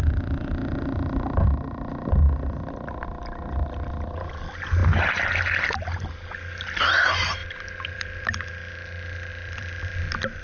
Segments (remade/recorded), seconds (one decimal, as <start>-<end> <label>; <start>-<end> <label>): 0.0-7.4 recorded; 7.4-8.5 remade; 8.5-9.3 recorded; 9.3-9.8 remade; 9.8-10.4 recorded